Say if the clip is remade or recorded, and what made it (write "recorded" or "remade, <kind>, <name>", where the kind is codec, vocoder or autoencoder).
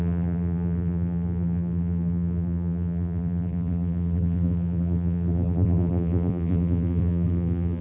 remade, vocoder, BigVGAN v2